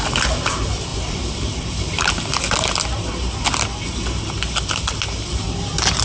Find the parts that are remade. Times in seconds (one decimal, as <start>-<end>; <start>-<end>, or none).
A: 0.9-2.1